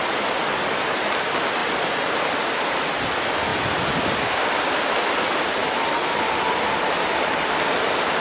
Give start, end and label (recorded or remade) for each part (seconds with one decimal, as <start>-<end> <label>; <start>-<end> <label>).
0.0-8.2 recorded